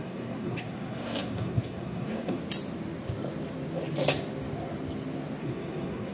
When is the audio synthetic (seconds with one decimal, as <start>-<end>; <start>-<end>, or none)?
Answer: 0.0-2.4; 5.4-6.1